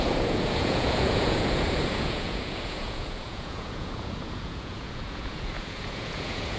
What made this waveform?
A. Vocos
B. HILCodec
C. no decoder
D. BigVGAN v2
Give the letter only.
A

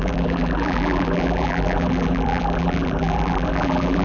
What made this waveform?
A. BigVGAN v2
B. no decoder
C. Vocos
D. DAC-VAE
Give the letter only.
A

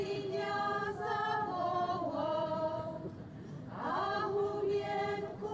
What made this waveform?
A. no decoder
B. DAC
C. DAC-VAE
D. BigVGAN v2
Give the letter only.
D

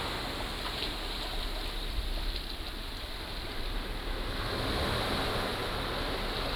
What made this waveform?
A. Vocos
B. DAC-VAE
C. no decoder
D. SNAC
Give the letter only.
C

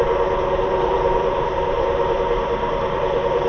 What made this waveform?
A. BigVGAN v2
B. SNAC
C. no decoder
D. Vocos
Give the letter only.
A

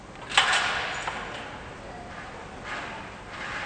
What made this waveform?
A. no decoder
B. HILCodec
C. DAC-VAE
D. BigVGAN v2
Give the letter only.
A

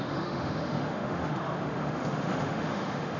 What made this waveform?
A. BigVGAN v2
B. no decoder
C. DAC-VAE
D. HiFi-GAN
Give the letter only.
C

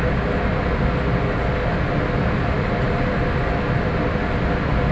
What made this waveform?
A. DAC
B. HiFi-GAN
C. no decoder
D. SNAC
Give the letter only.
C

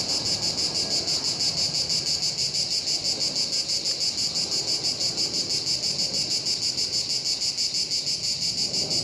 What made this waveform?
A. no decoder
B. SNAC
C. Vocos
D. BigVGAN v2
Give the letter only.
A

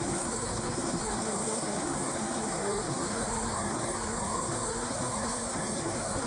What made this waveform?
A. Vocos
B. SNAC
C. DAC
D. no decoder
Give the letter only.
B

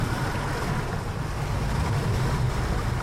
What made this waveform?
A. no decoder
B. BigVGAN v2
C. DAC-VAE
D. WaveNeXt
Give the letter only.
A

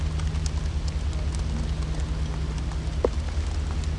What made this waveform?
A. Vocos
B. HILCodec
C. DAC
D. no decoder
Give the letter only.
D